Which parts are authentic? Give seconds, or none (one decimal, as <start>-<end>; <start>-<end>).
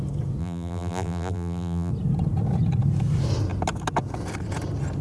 0.0-0.4; 1.9-5.0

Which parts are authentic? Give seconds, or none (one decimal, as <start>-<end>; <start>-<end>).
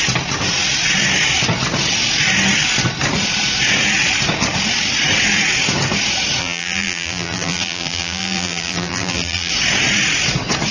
0.0-6.4; 9.5-10.7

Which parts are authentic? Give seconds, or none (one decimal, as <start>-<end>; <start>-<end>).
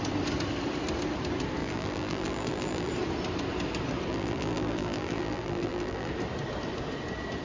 0.0-1.6; 2.9-4.1; 6.1-7.4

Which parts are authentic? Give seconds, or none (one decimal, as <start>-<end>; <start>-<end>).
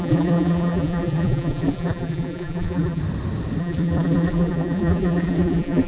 3.0-3.6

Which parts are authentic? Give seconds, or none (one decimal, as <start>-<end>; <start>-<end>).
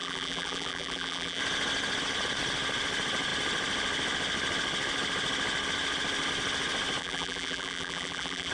1.4-7.0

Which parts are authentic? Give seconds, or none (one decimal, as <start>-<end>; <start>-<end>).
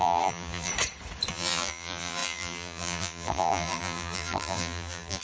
0.7-1.3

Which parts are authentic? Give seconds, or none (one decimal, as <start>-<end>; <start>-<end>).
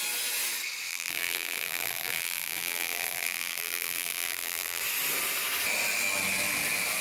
0.0-0.9; 4.8-7.0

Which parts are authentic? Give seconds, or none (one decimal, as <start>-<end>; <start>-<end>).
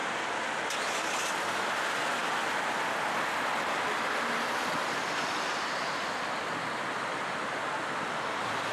0.0-8.7